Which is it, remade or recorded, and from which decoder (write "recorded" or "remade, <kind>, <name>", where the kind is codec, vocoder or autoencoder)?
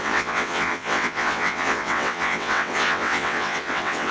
remade, vocoder, WaveNeXt